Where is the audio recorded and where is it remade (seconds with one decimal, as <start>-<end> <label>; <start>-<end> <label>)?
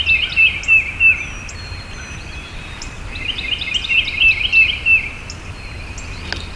0.0-6.6 recorded